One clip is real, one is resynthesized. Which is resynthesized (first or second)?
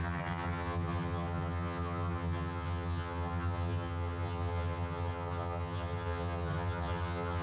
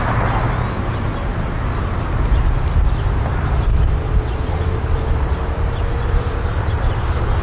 first